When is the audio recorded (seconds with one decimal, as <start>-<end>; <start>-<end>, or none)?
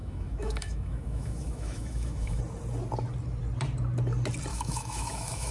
2.4-4.5